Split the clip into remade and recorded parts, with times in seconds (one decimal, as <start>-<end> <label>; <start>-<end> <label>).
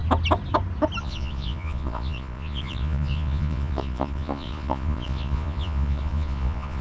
0.0-1.0 recorded; 1.0-6.8 remade